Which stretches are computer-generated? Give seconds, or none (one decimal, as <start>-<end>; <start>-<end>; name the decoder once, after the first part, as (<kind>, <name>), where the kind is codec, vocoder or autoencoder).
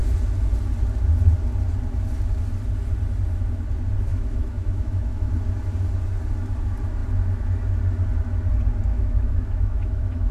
4.1-5.3 (autoencoder, DAC-VAE); 8.9-10.3